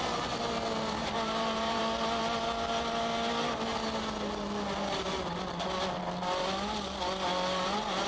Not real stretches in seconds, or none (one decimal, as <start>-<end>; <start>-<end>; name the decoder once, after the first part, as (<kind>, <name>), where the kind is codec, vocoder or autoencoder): 1.0-1.8 (vocoder, BigVGAN v2)